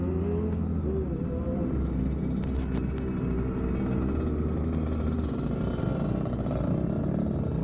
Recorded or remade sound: recorded